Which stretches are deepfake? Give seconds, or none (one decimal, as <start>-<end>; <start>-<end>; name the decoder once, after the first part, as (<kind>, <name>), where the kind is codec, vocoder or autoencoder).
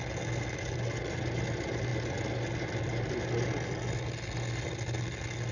none